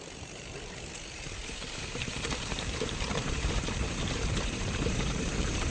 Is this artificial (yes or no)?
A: yes